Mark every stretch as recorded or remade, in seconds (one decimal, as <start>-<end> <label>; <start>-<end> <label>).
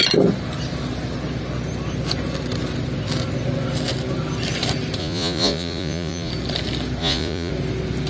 0.0-5.0 recorded; 5.0-6.3 remade; 6.3-7.0 recorded; 7.0-7.5 remade; 7.5-8.1 recorded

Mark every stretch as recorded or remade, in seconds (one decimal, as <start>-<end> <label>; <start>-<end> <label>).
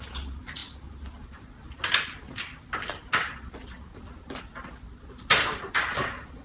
0.0-6.4 remade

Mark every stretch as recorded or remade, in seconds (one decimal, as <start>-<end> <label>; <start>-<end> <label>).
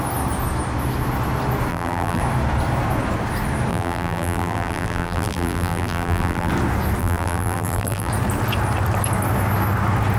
0.0-1.7 recorded; 1.7-2.2 remade; 2.2-3.7 recorded; 3.7-6.5 remade; 6.5-7.0 recorded; 7.0-8.1 remade; 8.1-10.2 recorded